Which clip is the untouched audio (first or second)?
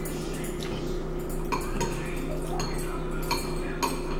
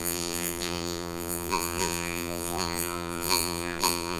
first